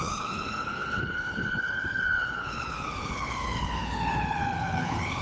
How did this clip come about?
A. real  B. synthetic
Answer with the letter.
B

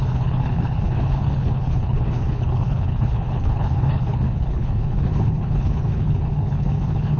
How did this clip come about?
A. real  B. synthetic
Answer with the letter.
B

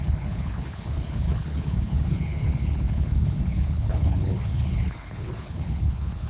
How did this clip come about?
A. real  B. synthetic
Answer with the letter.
B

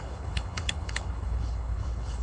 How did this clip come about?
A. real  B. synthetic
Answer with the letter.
B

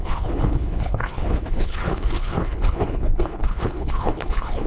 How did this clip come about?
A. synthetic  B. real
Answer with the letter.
A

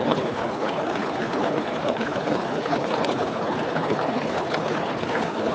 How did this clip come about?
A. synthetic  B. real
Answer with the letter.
A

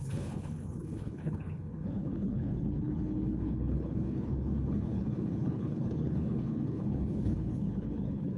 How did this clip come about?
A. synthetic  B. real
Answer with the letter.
A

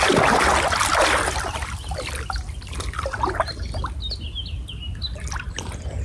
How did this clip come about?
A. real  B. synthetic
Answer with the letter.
A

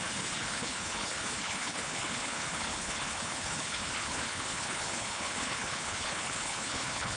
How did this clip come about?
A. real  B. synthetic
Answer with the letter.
B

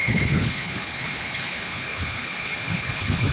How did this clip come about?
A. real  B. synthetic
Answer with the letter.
B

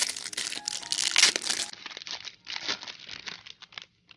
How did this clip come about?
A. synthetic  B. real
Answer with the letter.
B